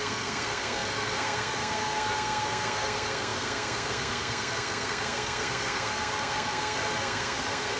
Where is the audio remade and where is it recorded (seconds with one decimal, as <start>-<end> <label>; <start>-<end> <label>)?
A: 0.0-7.8 remade